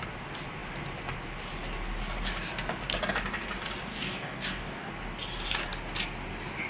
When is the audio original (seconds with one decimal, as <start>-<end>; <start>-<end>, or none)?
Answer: 0.0-3.9; 4.9-6.7